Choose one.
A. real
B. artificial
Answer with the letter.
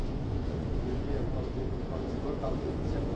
B